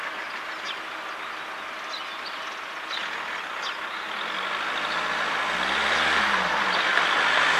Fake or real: real